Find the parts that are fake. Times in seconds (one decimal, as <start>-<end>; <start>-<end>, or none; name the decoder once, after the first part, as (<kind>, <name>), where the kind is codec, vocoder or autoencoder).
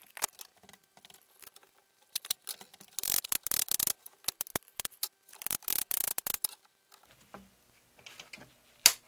none